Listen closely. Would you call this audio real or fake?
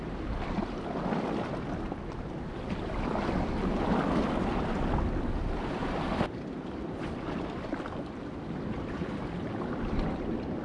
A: real